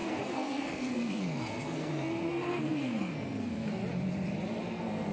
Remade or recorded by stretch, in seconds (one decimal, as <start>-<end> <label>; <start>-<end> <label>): 0.0-3.8 remade; 3.8-4.6 recorded; 4.6-5.1 remade